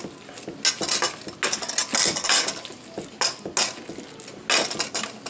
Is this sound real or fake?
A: real